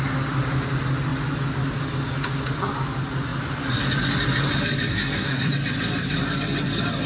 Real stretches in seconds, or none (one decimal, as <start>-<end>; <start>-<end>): 0.0-4.9; 5.5-7.1